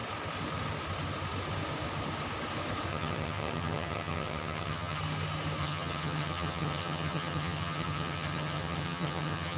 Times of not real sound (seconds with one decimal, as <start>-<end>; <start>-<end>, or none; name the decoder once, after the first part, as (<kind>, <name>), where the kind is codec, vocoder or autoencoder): 2.9-5.0 (vocoder, HiFi-GAN); 5.6-9.6